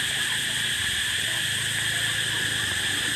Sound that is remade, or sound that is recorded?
remade